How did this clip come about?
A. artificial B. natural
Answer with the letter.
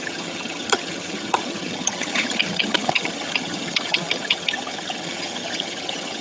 A